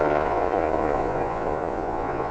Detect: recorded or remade remade